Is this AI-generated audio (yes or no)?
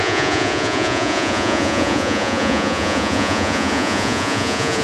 yes